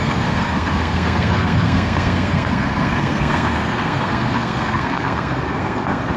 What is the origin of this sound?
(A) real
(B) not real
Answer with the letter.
B